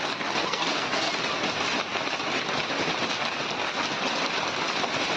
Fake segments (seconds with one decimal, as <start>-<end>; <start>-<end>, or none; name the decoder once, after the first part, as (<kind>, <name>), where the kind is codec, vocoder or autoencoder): 0.4-1.1 (codec, SNAC)